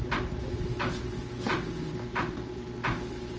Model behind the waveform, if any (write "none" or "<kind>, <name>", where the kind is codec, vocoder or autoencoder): none